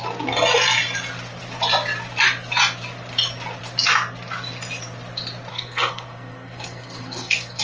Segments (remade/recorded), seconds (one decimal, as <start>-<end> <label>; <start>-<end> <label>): 0.0-5.5 recorded; 5.5-7.6 remade